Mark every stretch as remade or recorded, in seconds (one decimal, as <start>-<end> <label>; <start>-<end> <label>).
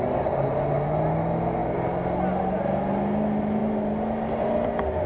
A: 0.0-5.1 recorded